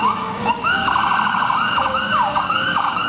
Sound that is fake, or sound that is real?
fake